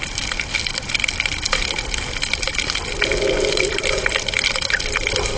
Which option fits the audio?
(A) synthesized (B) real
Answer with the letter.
B